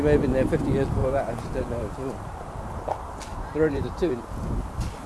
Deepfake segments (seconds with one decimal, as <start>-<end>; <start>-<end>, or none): 1.0-4.1